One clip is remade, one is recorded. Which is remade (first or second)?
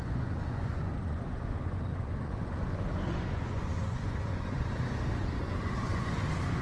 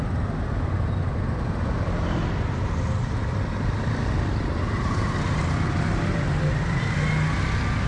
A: first